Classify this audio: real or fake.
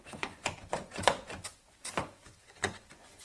fake